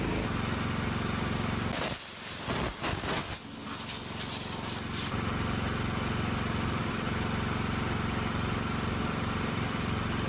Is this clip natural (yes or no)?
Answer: yes